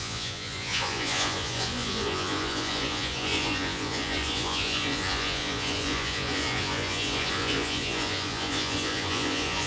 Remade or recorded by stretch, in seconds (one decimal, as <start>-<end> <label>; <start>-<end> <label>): 0.0-9.7 remade